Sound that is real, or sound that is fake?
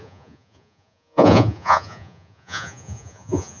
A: fake